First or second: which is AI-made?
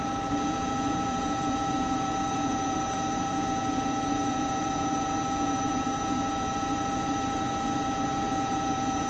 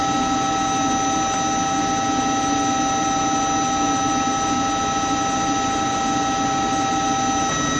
first